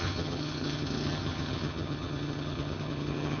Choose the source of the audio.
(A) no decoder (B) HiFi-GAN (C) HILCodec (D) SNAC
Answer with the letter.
B